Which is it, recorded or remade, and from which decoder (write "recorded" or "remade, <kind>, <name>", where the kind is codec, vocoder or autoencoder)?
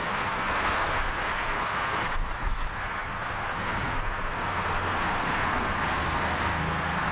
remade, codec, SNAC